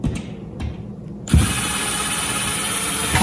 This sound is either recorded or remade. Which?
remade